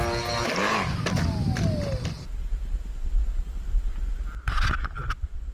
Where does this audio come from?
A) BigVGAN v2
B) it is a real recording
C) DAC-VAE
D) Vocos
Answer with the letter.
B